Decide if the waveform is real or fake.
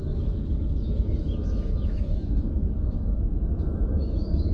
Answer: fake